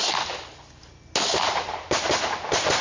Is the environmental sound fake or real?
real